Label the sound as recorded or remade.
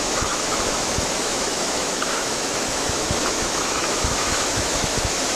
remade